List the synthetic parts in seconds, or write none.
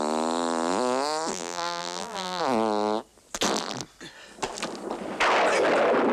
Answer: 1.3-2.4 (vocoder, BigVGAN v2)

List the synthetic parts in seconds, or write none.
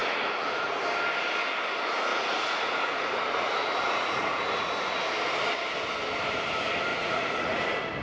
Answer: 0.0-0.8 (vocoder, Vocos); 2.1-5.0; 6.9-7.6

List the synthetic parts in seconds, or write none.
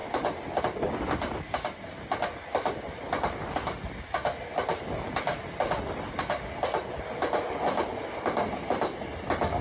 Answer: none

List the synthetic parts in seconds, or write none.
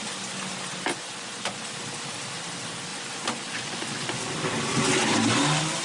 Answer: 0.9-1.6 (vocoder, Vocos); 2.9-4.3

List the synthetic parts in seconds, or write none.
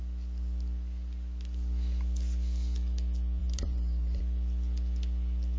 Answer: 3.4-4.2 (vocoder, BigVGAN v2)